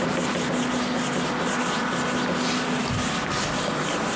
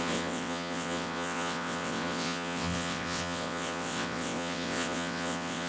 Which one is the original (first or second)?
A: first